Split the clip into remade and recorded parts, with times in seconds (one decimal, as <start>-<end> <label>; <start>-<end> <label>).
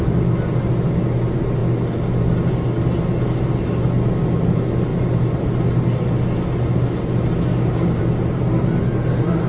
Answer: 0.0-7.5 recorded; 7.5-8.0 remade; 8.0-9.5 recorded